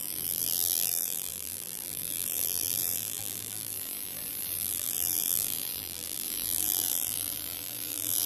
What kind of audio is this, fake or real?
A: fake